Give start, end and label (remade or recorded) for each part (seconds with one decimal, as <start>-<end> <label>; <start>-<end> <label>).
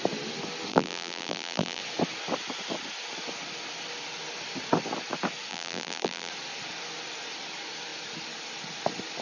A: 0.0-0.7 recorded; 0.7-1.8 remade; 1.8-5.5 recorded; 5.5-6.3 remade; 6.3-9.2 recorded